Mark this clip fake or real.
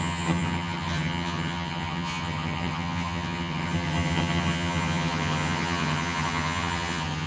fake